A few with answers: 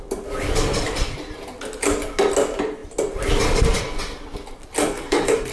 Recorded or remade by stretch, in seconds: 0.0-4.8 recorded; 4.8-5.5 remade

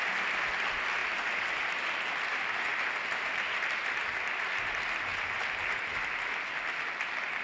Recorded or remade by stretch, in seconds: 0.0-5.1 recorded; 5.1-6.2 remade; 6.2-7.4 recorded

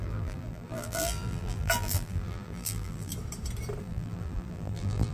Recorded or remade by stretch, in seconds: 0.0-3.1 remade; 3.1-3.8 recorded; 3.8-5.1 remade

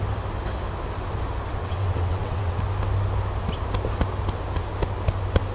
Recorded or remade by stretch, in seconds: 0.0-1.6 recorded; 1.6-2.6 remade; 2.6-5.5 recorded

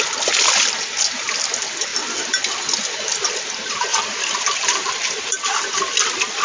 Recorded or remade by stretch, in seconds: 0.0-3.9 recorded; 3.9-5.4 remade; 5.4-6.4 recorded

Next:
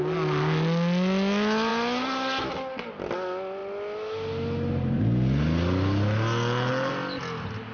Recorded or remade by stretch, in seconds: 0.0-7.7 recorded

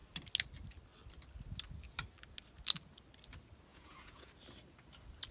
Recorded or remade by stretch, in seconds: 0.0-3.7 recorded; 3.7-4.3 remade; 4.3-5.3 recorded